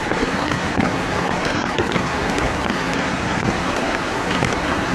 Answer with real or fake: fake